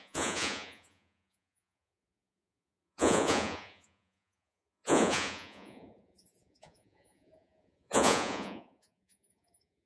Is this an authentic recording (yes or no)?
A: no